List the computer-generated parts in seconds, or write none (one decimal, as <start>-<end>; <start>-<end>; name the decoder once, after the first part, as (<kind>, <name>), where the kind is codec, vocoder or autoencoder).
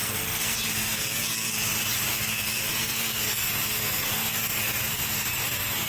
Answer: 0.0-1.5 (codec, SNAC); 2.1-5.9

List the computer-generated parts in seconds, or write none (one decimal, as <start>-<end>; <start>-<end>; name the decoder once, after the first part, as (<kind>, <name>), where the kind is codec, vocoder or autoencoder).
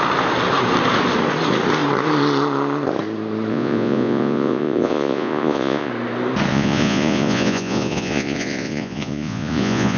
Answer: 3.5-5.9 (vocoder, Vocos); 6.5-10.0